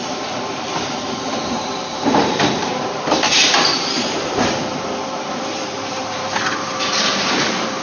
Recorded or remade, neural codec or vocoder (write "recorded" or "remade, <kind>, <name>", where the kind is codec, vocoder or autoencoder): remade, vocoder, BigVGAN v2